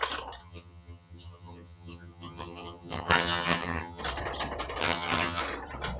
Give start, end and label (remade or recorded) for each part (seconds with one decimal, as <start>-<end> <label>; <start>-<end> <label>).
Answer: 0.0-0.4 recorded; 0.4-4.0 remade; 4.0-4.8 recorded; 4.8-5.4 remade; 5.4-6.0 recorded